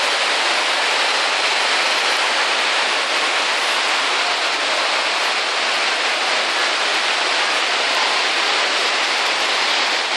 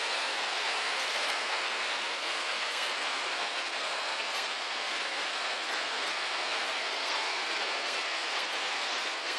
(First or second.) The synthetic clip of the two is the second